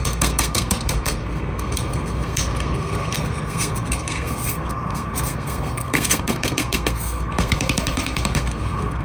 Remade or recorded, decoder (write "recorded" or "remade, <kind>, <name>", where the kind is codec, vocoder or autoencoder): remade, codec, SNAC